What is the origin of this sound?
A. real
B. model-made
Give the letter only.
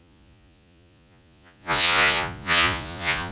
B